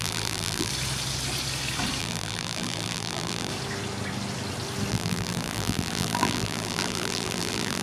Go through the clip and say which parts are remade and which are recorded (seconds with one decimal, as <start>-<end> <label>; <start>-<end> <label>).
0.0-0.7 remade; 0.7-2.0 recorded; 2.0-3.5 remade; 3.5-4.9 recorded; 4.9-7.8 remade